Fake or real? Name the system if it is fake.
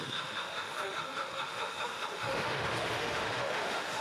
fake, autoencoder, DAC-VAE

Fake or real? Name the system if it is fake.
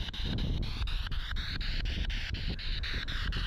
real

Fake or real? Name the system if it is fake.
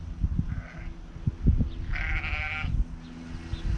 real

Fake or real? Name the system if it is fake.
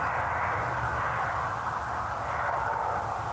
real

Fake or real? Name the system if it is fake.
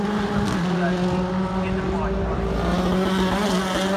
real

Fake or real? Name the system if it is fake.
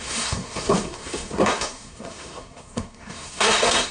fake, codec, SNAC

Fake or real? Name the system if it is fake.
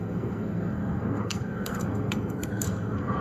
fake, codec, SNAC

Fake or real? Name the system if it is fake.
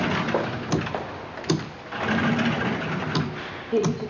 real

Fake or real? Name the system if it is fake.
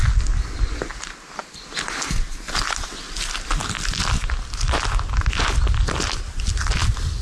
real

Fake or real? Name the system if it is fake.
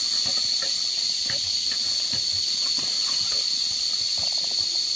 real